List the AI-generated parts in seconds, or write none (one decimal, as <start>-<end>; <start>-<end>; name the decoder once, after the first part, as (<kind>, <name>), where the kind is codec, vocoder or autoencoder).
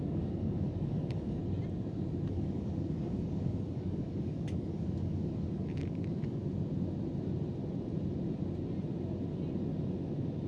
0.0-1.4 (codec, DAC); 2.3-6.4